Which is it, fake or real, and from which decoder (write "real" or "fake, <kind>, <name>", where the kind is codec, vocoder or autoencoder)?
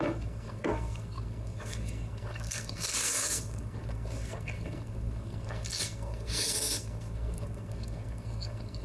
fake, codec, SNAC